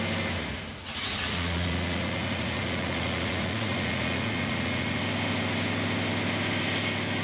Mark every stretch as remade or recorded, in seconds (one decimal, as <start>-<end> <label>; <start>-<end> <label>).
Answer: 0.0-0.7 recorded; 0.7-5.0 remade; 5.0-7.2 recorded